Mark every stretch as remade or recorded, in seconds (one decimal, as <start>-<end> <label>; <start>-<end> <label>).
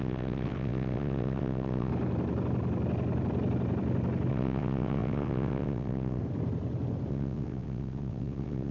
0.0-1.9 remade; 1.9-4.3 recorded; 4.3-6.2 remade; 6.2-7.1 recorded; 7.1-8.7 remade